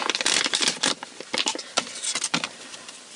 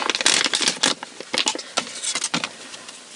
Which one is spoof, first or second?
first